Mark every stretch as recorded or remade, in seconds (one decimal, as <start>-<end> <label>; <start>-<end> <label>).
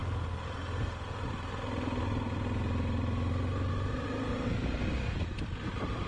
0.0-6.1 recorded